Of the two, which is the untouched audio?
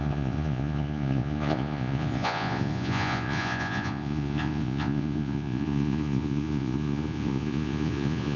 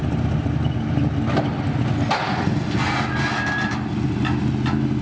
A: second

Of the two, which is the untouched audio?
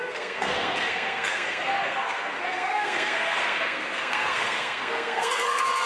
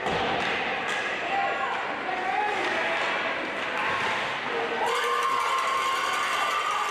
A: second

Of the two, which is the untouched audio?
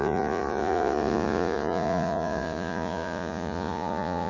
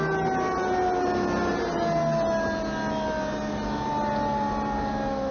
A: second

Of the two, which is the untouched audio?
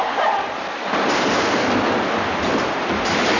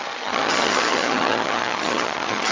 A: first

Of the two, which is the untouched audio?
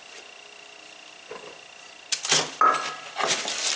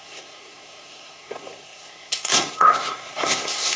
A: first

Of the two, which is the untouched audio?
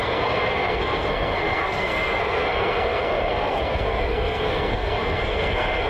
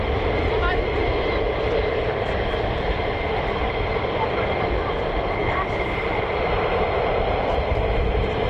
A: second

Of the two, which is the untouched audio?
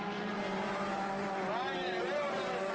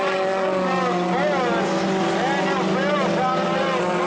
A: second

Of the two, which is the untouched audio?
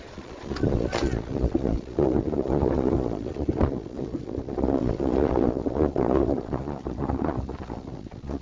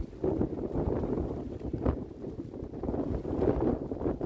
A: second